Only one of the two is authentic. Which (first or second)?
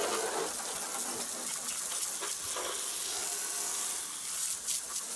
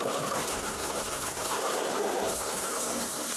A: first